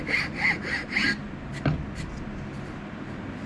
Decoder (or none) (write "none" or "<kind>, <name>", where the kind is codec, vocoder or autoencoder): none